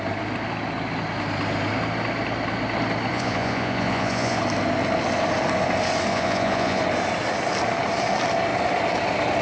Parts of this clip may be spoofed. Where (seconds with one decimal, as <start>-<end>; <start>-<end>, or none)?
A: 3.1-4.4; 6.1-6.8